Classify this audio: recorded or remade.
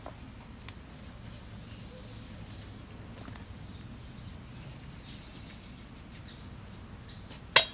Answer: recorded